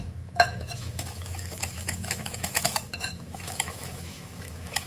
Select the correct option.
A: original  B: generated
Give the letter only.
B